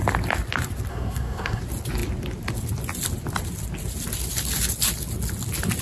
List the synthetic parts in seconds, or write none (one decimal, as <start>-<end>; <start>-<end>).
0.9-1.6